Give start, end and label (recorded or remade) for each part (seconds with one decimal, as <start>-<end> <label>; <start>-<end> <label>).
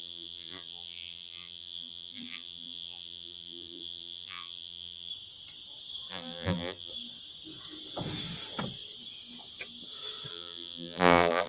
0.0-5.1 remade; 5.1-6.1 recorded; 6.1-6.9 remade; 6.9-10.3 recorded; 10.3-11.5 remade